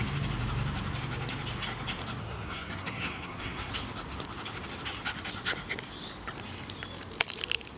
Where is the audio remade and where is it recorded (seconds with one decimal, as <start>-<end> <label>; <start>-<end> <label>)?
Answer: 0.0-2.2 recorded; 2.2-3.7 remade; 3.7-7.8 recorded